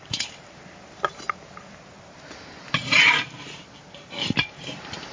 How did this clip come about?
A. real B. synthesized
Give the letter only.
A